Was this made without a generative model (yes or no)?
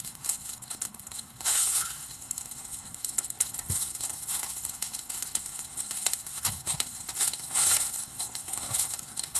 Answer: no